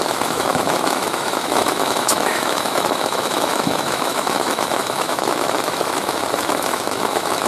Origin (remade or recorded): remade